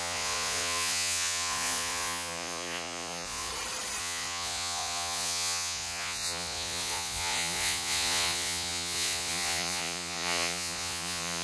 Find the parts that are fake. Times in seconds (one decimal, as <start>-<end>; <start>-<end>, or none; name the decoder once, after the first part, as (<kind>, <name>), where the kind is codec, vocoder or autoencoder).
0.0-3.5 (vocoder, Vocos); 4.0-11.4